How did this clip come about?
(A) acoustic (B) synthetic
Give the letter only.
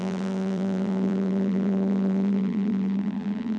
B